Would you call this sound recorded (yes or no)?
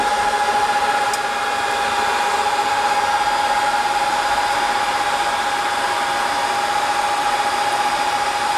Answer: yes